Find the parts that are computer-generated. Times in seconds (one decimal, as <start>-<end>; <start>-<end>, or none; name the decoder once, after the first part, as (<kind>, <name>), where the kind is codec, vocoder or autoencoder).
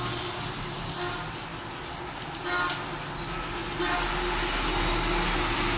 none